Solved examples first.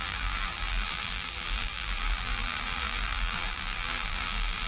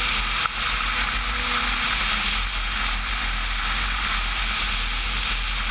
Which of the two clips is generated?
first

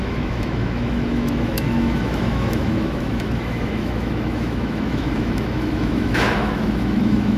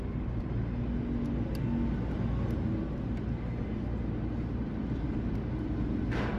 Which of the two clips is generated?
first